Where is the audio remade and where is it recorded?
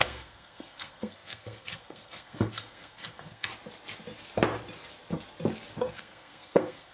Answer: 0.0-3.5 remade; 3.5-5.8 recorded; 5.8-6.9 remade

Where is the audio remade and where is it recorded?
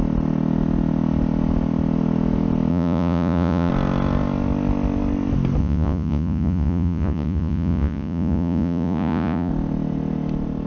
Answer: 0.0-2.7 recorded; 2.7-3.7 remade; 3.7-5.6 recorded; 5.6-9.5 remade; 9.5-10.7 recorded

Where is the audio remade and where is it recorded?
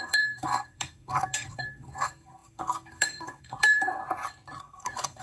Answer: 0.0-4.0 remade; 4.0-4.6 recorded; 4.6-5.2 remade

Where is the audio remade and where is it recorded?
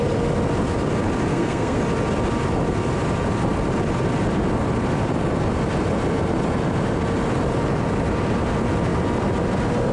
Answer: 0.0-1.3 recorded; 1.3-1.8 remade; 1.8-9.9 recorded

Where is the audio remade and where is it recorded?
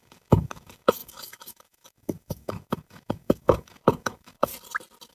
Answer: 0.0-4.5 remade; 4.5-5.1 recorded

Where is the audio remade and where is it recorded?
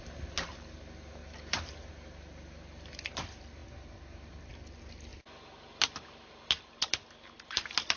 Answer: 0.0-8.0 recorded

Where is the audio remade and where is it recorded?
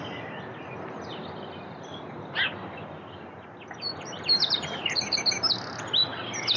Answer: 0.0-3.9 recorded; 3.9-5.2 remade; 5.2-6.6 recorded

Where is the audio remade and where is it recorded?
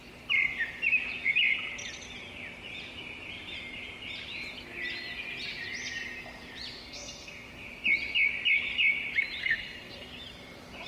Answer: 0.0-6.8 recorded; 6.8-7.5 remade; 7.5-9.4 recorded; 9.4-10.1 remade; 10.1-10.9 recorded